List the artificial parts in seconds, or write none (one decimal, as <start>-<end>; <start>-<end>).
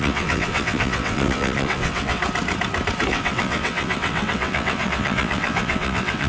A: 0.0-2.2; 3.1-6.3